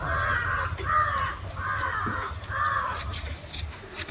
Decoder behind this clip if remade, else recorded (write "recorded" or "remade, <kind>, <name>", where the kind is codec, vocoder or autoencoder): recorded